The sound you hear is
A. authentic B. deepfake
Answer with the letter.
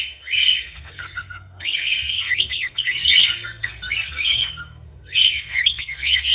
B